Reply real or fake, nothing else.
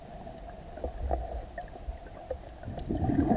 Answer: real